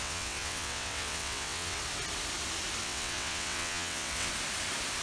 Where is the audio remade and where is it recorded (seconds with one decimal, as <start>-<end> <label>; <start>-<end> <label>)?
0.0-1.8 remade; 1.8-2.8 recorded; 2.8-4.3 remade; 4.3-5.0 recorded